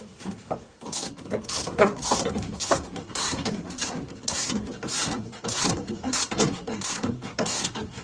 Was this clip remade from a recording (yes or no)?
yes